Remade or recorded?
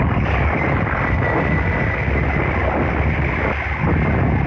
recorded